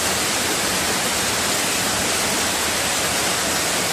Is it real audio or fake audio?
real